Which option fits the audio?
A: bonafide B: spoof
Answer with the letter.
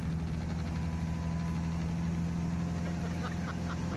A